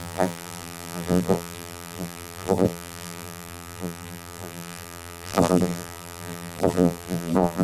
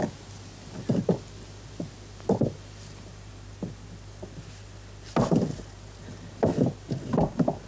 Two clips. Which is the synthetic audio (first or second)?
first